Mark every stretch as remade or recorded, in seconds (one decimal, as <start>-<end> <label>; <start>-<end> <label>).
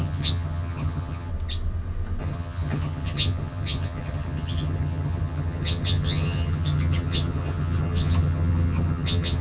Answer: 0.0-1.3 remade; 1.3-2.2 recorded; 2.2-9.4 remade